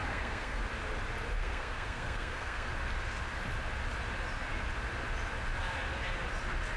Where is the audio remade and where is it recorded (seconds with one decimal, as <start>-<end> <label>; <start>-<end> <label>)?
0.0-0.6 remade; 0.6-1.4 recorded; 1.4-2.7 remade; 2.7-6.8 recorded